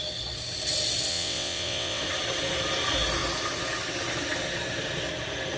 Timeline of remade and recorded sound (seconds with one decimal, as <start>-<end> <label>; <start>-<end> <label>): 0.0-1.1 recorded; 1.1-2.0 remade; 2.0-5.6 recorded